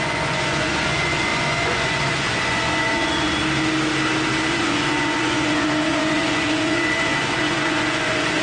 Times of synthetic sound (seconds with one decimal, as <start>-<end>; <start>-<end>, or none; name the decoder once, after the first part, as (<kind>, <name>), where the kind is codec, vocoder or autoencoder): 0.0-3.4 (vocoder, Vocos); 4.5-8.4